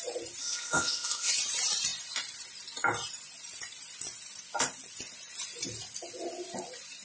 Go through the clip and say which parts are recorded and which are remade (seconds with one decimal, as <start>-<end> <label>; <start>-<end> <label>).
0.0-0.4 recorded; 0.4-1.3 remade; 1.3-7.0 recorded